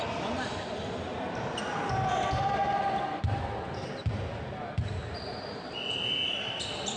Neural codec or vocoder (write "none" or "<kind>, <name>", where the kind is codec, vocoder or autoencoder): none